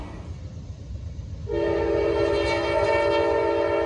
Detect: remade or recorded recorded